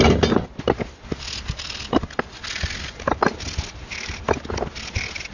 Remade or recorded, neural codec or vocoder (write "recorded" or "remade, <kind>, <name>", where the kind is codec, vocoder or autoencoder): recorded